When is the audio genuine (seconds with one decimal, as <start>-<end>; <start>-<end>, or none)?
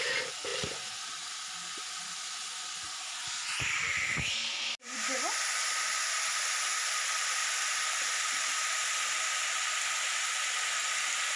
0.0-11.4